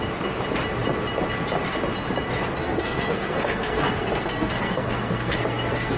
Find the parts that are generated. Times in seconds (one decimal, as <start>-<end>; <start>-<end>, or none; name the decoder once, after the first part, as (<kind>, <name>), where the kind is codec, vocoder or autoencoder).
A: 2.6-6.0 (codec, SNAC)